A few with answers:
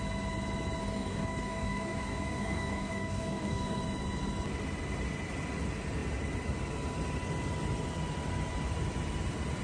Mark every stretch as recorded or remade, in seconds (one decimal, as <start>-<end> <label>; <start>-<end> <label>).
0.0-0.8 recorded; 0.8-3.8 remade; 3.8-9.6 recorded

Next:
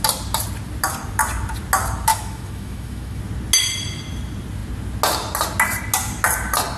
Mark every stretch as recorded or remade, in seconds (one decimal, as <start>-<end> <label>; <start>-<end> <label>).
0.0-2.1 recorded; 2.1-3.2 remade; 3.2-6.8 recorded

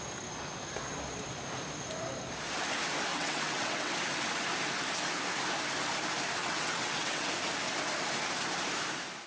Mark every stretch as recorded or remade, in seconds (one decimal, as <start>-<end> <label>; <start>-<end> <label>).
0.0-3.1 recorded; 3.1-3.9 remade; 3.9-6.4 recorded; 6.4-7.3 remade; 7.3-9.3 recorded

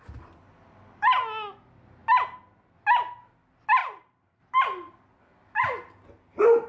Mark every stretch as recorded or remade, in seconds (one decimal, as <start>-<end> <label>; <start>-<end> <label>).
0.0-3.8 recorded; 3.8-4.4 remade; 4.4-6.7 recorded

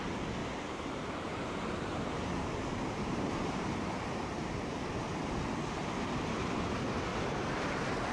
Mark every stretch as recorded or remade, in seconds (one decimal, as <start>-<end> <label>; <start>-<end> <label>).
0.0-0.4 recorded; 0.4-4.0 remade; 4.0-7.1 recorded; 7.1-8.1 remade